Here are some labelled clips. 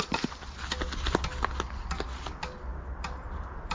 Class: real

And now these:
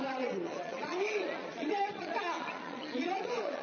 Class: fake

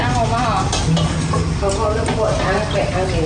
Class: real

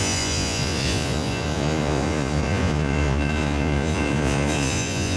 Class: fake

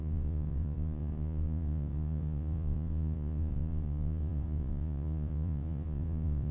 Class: fake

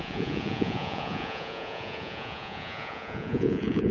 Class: fake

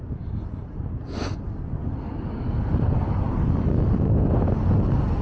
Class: real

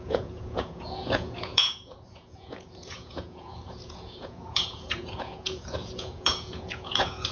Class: fake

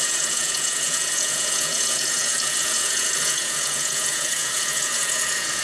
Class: fake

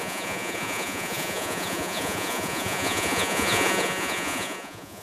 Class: fake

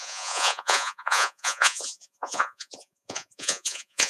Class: fake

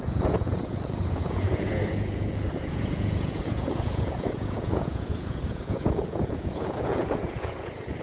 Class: fake